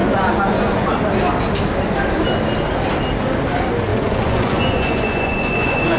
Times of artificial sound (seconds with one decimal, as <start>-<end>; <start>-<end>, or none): 0.0-0.9; 3.9-6.0